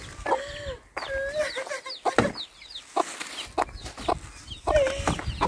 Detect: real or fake real